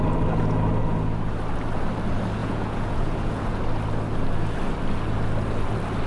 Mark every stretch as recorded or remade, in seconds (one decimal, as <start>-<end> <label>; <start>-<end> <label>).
0.0-2.4 recorded; 2.4-3.6 remade; 3.6-6.1 recorded